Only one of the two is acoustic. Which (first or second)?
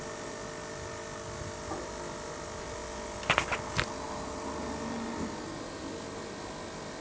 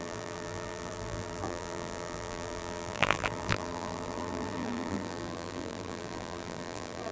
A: first